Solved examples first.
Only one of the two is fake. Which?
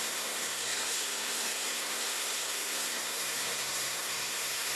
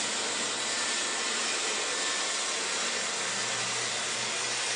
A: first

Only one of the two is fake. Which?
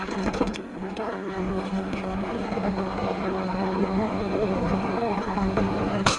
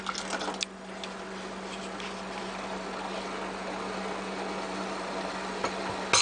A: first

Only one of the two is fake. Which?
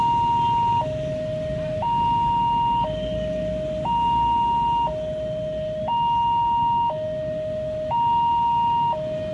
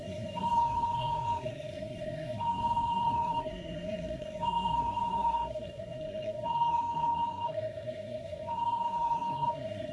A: second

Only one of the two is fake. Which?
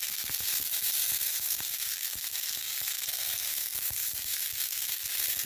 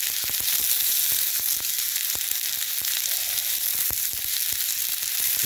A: first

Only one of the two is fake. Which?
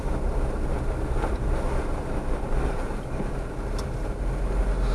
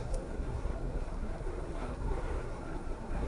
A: second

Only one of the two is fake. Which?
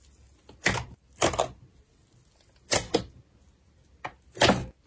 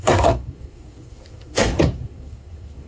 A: second